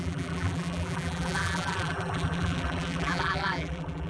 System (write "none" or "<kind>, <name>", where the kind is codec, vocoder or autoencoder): vocoder, BigVGAN v2